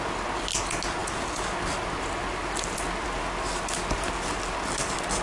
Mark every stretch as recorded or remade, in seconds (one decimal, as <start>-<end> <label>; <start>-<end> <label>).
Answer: 0.0-5.2 recorded